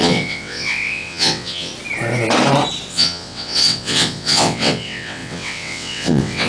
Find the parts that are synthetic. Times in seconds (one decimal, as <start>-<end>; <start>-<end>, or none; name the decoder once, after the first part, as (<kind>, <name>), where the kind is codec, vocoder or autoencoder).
0.0-1.7 (vocoder, WaveNeXt); 2.9-6.5